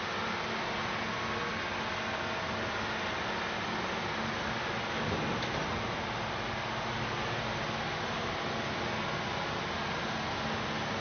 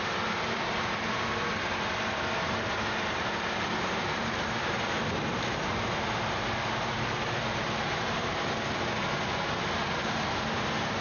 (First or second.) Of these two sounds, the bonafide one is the first